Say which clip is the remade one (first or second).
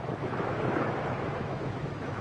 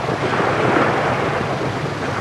first